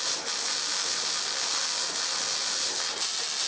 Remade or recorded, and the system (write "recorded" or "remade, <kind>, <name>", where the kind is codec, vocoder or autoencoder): recorded